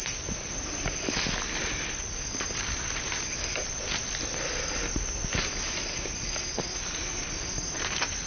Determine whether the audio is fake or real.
real